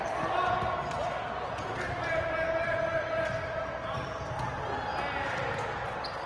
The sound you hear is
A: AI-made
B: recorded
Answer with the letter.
B